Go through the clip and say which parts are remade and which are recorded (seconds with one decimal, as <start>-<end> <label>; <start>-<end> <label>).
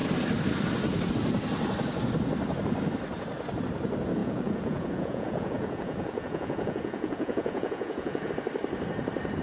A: 0.0-4.2 recorded; 4.2-8.3 remade; 8.3-9.4 recorded